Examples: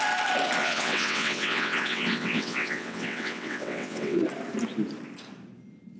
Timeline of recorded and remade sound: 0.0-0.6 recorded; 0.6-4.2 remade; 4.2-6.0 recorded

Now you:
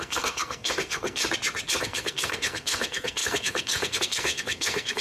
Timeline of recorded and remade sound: 0.0-1.2 remade; 1.2-1.8 recorded; 1.8-5.0 remade

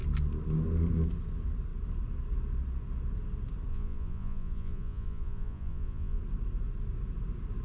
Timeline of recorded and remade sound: 0.0-3.7 recorded; 3.7-6.2 remade; 6.2-7.6 recorded

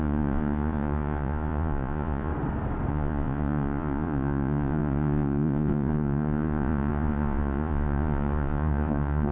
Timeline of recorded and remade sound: 0.0-2.3 remade; 2.3-2.9 recorded; 2.9-9.3 remade

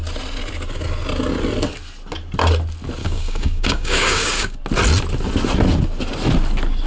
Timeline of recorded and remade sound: 0.0-3.0 recorded; 3.0-4.6 remade; 4.6-6.9 recorded

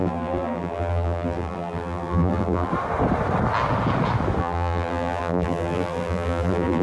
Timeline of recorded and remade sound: 0.0-2.7 remade; 2.7-4.4 recorded; 4.4-6.8 remade